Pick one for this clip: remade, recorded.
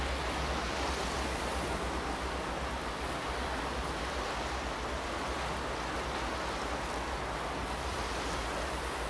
recorded